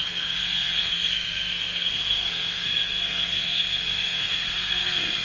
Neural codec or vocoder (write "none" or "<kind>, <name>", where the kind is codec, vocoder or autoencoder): codec, SNAC